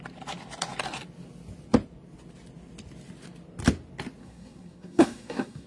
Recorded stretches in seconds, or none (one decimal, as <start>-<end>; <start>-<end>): 0.0-4.2